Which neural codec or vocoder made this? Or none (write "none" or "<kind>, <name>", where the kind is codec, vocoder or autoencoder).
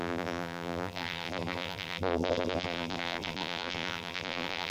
vocoder, BigVGAN v2